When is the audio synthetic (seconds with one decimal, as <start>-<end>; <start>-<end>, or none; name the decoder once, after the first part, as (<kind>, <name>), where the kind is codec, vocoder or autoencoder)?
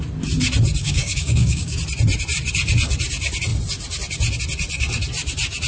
0.8-1.8 (codec, DAC)